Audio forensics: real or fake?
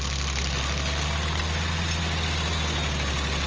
real